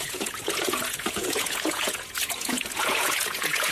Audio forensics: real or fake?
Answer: fake